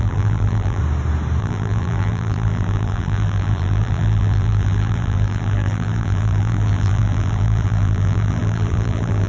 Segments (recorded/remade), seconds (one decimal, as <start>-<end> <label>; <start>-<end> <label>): 0.0-0.8 remade; 0.8-1.4 recorded; 1.4-9.3 remade